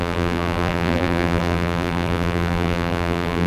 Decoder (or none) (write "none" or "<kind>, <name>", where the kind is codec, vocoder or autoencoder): vocoder, BigVGAN v2